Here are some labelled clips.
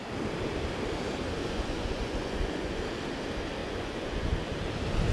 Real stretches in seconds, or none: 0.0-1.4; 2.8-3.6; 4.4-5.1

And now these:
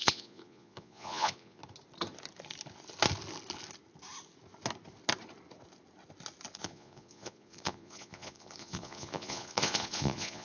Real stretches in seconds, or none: 1.6-6.5

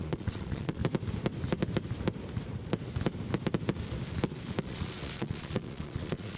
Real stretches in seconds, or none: 0.8-4.6

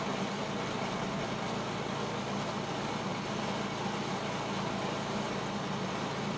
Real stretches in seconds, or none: 0.0-6.4

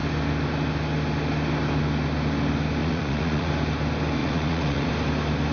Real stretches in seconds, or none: 0.0-2.8; 3.5-4.2; 4.9-5.5

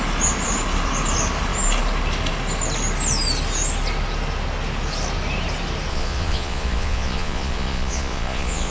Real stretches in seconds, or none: 0.0-5.9

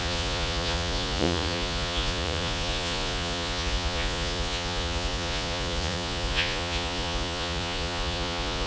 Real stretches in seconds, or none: none